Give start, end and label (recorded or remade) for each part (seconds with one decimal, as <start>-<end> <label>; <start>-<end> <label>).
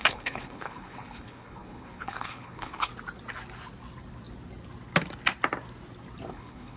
0.0-2.9 remade; 2.9-6.3 recorded; 6.3-6.8 remade